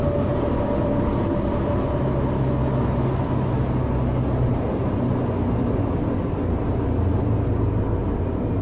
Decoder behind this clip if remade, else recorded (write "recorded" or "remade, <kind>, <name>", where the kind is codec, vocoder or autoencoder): recorded